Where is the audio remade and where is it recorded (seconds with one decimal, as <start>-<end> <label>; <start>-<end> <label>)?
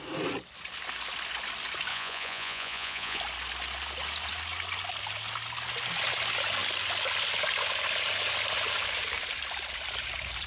0.0-1.9 recorded; 1.9-3.2 remade; 3.2-10.5 recorded